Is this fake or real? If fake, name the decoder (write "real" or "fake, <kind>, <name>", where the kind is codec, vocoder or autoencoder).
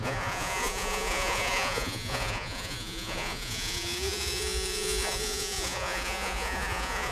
fake, vocoder, Vocos